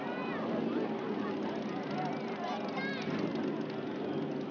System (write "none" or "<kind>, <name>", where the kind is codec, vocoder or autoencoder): none